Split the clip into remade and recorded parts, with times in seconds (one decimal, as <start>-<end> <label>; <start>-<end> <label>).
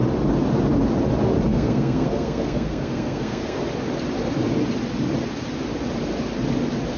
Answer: 0.0-1.5 recorded; 1.5-3.6 remade; 3.6-7.0 recorded